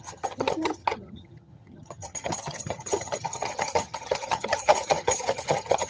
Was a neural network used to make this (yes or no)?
yes